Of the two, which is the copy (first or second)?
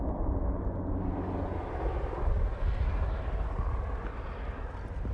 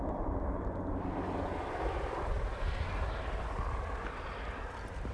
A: second